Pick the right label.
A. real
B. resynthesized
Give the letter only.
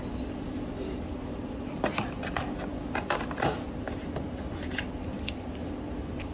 A